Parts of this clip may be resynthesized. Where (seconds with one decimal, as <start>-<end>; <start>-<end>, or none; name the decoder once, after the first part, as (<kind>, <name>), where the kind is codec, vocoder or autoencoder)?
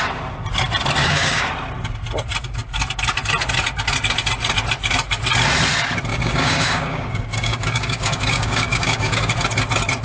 1.0-1.5 (codec, DAC); 6.1-9.3